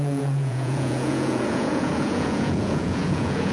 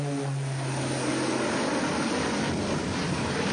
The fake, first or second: first